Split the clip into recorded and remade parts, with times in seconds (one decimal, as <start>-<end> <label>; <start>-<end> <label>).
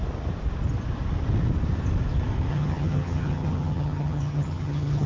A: 0.0-2.5 recorded; 2.5-5.1 remade